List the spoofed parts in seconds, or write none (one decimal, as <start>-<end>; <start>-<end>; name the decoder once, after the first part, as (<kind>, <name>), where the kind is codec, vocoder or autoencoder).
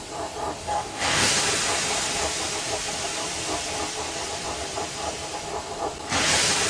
0.6-1.3 (codec, DAC)